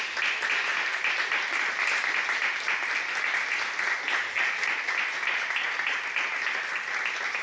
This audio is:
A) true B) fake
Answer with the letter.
A